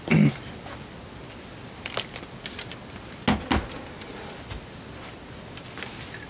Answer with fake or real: real